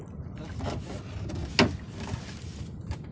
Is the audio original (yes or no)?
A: yes